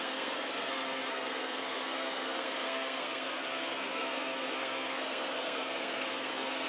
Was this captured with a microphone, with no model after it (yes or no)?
no